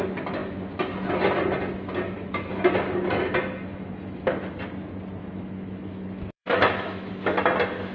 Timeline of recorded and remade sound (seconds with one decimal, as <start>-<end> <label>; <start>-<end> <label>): 0.0-3.7 recorded; 3.7-4.6 remade; 4.6-5.2 recorded; 5.2-7.1 remade; 7.1-7.9 recorded